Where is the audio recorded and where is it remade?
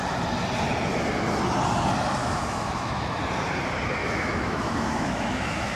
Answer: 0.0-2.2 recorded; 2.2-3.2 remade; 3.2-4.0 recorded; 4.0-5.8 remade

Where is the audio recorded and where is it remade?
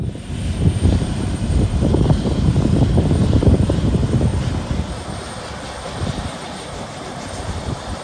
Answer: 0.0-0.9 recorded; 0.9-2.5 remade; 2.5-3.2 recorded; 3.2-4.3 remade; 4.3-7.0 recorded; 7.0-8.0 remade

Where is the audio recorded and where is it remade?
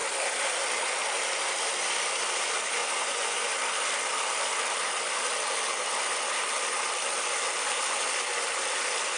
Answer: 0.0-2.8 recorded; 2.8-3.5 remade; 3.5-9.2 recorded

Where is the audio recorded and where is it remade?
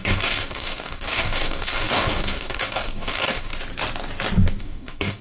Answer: 0.0-3.5 remade; 3.5-4.6 recorded; 4.6-5.2 remade